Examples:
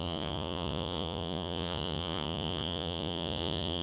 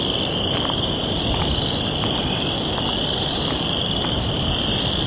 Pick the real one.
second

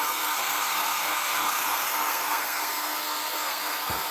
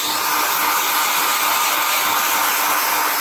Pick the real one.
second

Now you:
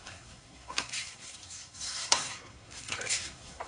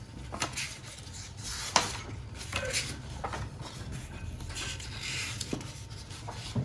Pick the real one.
second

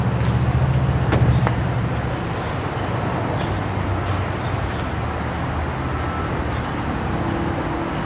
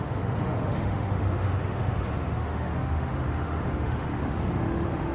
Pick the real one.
first